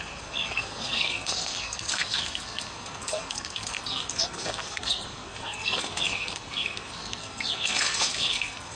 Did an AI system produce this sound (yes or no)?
yes